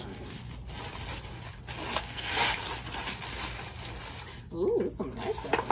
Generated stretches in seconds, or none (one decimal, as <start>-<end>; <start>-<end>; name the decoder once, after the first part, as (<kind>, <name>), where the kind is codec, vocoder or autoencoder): 0.0-0.4 (codec, SNAC); 2.0-2.4